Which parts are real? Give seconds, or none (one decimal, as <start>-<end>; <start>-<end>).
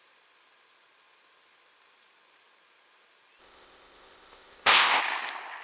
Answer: 0.0-3.4; 5.0-5.6